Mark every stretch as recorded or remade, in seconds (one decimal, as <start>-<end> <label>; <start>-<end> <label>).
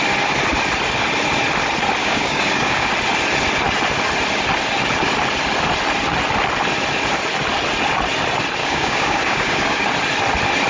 0.0-2.0 recorded; 2.0-2.9 remade; 2.9-8.6 recorded; 8.6-9.9 remade; 9.9-10.7 recorded